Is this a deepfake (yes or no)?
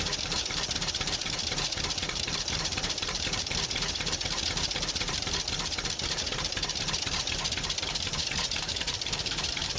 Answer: yes